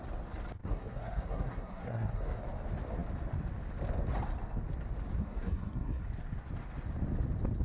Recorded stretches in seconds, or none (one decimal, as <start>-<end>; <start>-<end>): 0.0-0.6; 2.4-5.2; 6.0-7.6